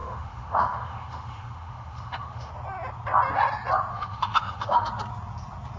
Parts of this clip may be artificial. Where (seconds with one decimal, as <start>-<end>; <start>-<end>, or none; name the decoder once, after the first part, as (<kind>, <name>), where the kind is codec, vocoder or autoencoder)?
0.0-2.5 (autoencoder, DAC-VAE); 3.9-4.9